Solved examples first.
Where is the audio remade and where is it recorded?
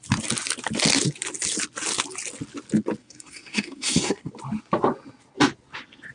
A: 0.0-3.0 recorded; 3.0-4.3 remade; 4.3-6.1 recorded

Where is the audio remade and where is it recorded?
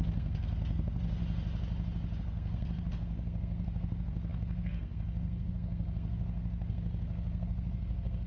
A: 0.0-1.2 remade; 1.2-2.2 recorded; 2.2-8.3 remade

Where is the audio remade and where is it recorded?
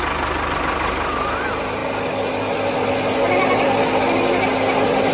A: 0.0-5.1 recorded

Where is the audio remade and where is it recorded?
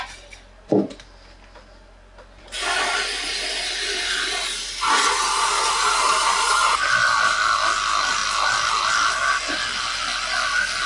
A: 0.0-10.9 recorded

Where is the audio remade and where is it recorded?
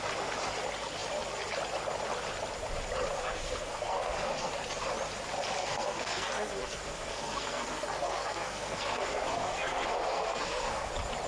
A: 0.0-3.2 recorded; 3.2-4.5 remade; 4.5-5.6 recorded; 5.6-10.9 remade; 10.9-11.3 recorded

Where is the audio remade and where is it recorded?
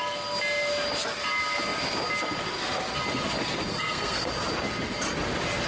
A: 0.0-3.7 recorded; 3.7-4.3 remade; 4.3-5.7 recorded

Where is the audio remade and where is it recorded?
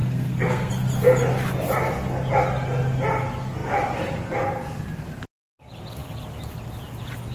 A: 0.0-0.7 remade; 0.7-7.3 recorded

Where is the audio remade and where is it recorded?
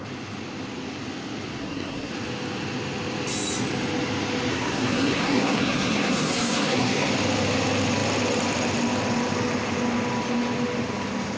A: 0.0-1.6 recorded; 1.6-2.1 remade; 2.1-4.5 recorded; 4.5-7.1 remade; 7.1-11.4 recorded